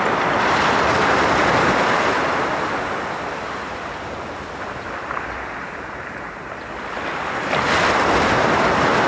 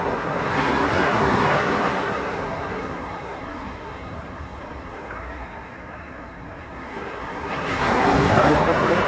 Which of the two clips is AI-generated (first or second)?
second